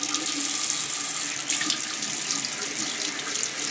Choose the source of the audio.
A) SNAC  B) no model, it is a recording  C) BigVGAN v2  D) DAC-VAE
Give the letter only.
B